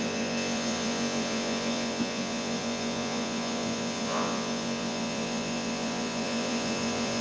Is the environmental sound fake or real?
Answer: fake